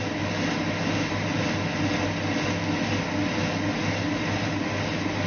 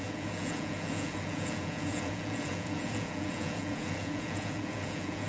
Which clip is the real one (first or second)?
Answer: first